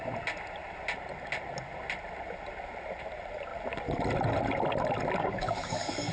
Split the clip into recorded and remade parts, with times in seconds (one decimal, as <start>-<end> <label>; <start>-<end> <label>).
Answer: 0.0-5.2 recorded; 5.2-6.1 remade

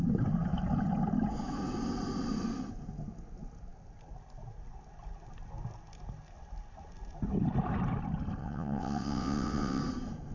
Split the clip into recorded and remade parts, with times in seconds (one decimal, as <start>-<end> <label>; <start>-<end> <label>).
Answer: 0.0-8.4 recorded; 8.4-9.8 remade; 9.8-10.3 recorded